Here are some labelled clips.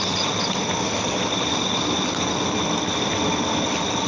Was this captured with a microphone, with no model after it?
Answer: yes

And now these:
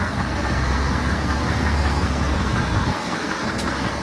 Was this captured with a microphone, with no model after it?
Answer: no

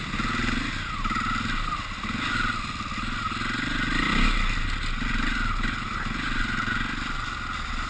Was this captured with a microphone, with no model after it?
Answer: yes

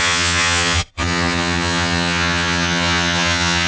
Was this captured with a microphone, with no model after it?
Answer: no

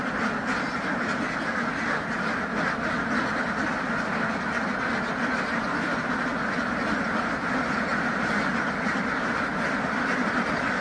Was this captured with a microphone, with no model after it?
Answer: yes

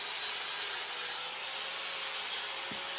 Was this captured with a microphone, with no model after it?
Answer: yes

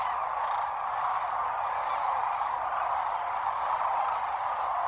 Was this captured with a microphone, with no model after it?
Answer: yes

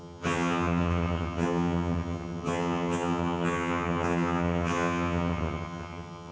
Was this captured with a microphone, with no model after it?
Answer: no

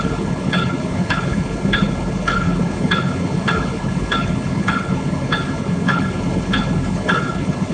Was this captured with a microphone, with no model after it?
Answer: no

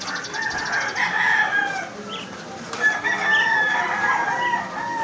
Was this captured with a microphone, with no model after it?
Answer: yes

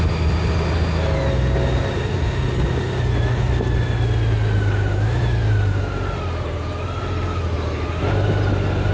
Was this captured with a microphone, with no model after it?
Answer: yes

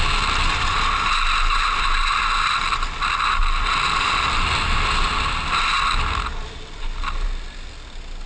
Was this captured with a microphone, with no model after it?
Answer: yes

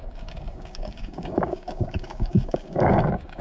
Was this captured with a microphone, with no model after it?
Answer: no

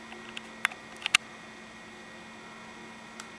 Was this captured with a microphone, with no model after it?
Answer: yes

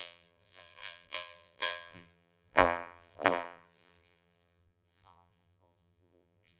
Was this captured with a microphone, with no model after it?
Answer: no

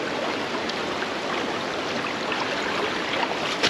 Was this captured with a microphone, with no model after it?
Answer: yes